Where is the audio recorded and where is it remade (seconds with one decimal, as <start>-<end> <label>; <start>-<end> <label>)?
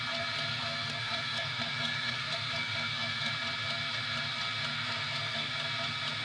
0.0-0.5 recorded; 0.5-3.3 remade; 3.3-4.7 recorded; 4.7-5.5 remade; 5.5-6.2 recorded